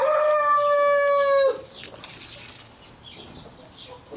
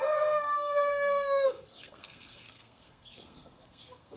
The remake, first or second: second